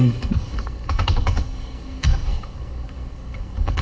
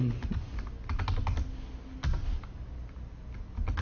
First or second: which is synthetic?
first